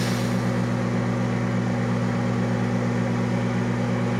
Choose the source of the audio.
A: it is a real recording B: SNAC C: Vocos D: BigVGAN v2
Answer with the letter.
A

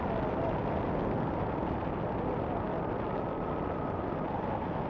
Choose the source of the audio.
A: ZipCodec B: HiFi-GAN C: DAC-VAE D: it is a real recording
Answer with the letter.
D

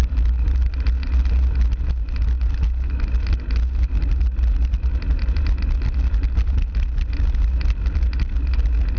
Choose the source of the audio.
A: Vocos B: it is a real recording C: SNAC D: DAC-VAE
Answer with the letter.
B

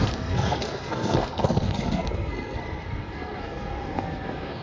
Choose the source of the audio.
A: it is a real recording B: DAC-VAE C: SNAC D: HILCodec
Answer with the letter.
C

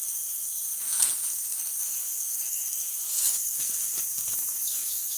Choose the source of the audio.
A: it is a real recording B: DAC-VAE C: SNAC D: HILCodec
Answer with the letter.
C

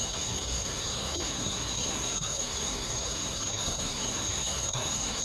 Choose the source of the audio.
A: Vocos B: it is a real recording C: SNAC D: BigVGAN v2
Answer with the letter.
C